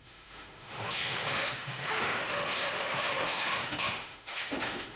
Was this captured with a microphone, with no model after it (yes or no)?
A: no